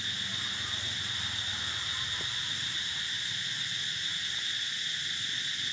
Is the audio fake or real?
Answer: real